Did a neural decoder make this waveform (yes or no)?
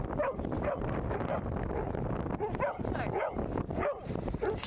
no